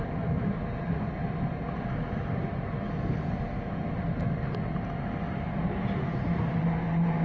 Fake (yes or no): no